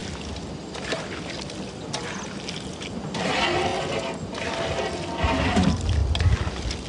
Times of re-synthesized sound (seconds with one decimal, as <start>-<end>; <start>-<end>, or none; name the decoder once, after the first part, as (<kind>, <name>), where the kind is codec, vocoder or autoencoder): none